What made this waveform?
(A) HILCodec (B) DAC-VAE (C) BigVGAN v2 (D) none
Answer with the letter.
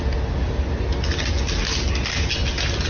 D